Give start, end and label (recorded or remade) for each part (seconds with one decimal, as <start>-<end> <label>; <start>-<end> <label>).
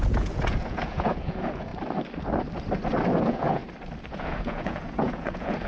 0.0-1.7 remade; 1.7-3.2 recorded; 3.2-3.6 remade; 3.6-4.1 recorded; 4.1-5.7 remade